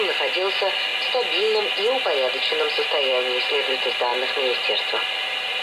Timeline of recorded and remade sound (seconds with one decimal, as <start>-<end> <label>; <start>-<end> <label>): 0.0-5.6 recorded